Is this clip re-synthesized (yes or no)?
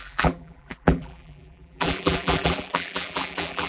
yes